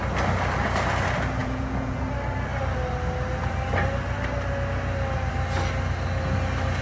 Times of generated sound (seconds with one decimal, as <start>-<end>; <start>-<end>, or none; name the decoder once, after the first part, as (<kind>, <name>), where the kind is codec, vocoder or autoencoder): 1.4-2.0 (vocoder, Vocos)